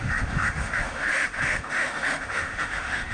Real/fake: fake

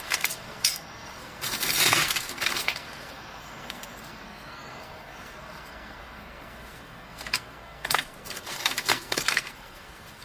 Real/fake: fake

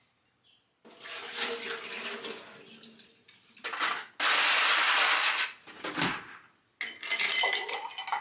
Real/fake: real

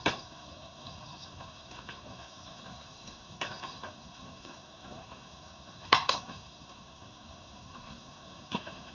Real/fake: fake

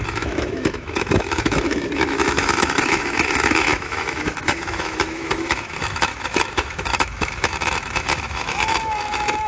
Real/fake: fake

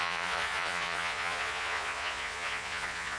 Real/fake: fake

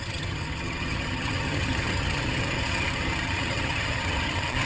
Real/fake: fake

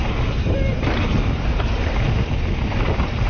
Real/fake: real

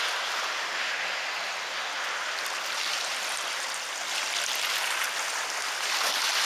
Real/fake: real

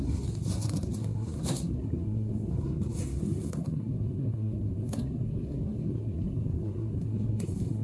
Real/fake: fake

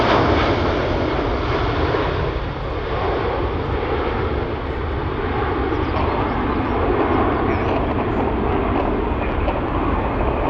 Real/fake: real